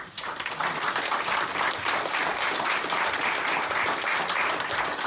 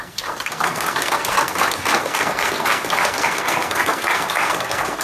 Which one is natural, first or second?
first